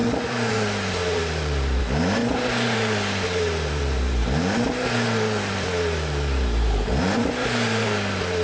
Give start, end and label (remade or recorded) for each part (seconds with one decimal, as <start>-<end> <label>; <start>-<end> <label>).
0.0-8.4 remade